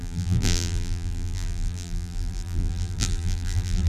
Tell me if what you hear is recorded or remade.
remade